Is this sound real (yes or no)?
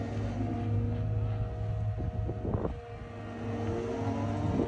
yes